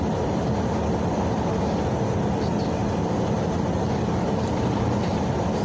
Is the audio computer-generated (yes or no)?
no